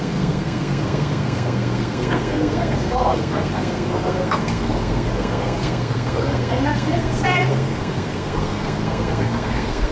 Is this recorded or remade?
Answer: remade